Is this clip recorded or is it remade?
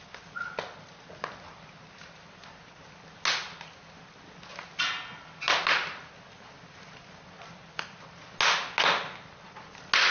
recorded